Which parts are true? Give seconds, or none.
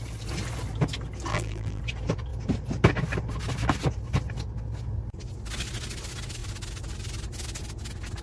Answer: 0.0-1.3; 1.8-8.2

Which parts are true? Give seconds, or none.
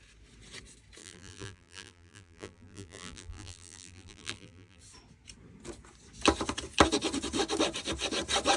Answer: 0.0-1.0; 4.8-8.6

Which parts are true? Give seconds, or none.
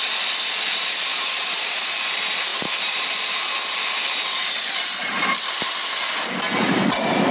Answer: 0.0-1.1; 1.8-2.5; 3.6-5.0; 5.5-7.3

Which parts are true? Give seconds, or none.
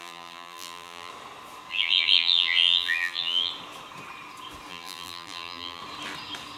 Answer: 1.1-1.7; 3.5-4.7; 5.8-6.6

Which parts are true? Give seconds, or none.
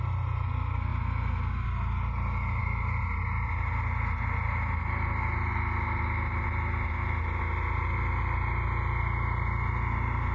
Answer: 0.0-10.3